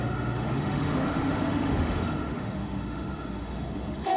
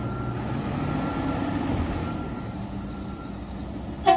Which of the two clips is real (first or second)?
second